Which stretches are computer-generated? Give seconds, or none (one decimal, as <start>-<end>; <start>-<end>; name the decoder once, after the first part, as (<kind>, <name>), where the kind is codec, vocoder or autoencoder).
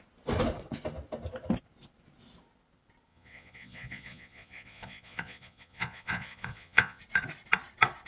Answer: 3.1-7.0 (vocoder, Vocos)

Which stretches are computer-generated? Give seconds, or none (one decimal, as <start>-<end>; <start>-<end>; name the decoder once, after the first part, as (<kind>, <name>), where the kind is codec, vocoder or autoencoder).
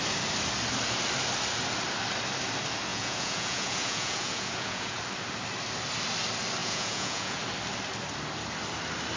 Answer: 2.9-5.0 (vocoder, Vocos); 6.6-7.4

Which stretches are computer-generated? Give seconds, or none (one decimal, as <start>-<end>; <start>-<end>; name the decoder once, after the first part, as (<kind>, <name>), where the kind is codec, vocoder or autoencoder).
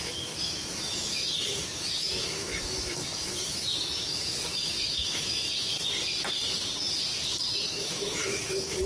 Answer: 0.0-5.7 (autoencoder, DAC-VAE); 7.7-8.9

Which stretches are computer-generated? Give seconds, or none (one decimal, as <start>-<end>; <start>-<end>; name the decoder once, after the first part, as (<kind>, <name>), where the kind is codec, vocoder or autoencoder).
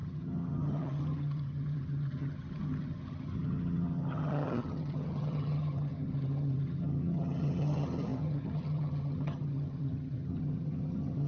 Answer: 0.0-11.3 (vocoder, HiFi-GAN)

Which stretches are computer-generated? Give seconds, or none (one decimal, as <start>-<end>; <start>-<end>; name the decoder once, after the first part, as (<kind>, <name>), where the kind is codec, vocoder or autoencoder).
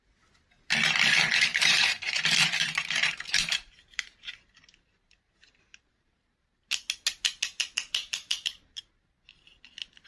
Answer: 1.5-6.6 (vocoder, BigVGAN v2); 8.0-8.8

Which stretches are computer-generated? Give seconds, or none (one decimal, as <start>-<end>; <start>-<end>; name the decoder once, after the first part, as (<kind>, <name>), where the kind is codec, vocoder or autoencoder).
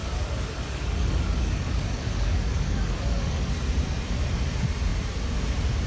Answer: 0.0-3.5 (codec, DAC)